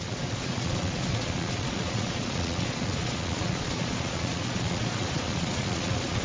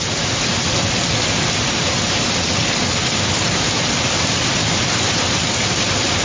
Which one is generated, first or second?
first